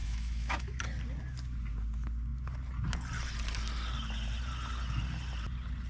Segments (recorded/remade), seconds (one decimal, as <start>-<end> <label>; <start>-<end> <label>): 0.0-0.8 remade; 0.8-5.9 recorded